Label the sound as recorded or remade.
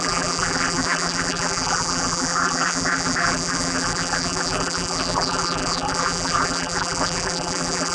remade